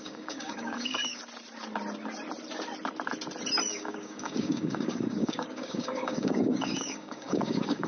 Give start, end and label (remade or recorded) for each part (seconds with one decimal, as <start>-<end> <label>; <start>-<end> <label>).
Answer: 0.0-1.2 remade; 1.2-3.7 recorded; 3.7-7.9 remade